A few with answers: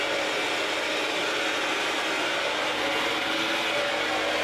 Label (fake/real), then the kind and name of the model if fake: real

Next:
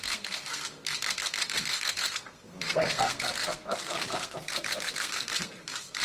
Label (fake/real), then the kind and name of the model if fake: fake, codec, SNAC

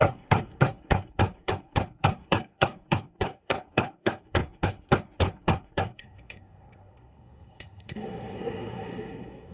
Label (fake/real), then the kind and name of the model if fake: fake, codec, SNAC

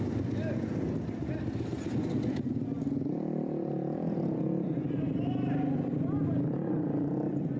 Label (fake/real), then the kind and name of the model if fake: real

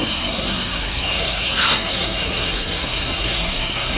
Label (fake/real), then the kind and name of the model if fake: fake, codec, SNAC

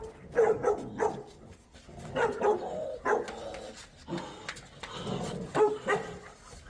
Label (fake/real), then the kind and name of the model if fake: real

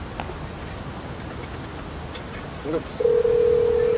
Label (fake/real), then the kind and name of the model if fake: real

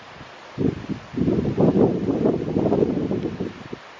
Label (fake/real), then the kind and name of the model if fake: real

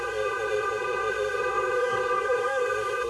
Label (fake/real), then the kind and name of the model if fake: fake, codec, SNAC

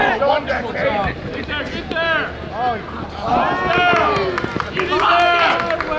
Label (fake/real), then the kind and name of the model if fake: real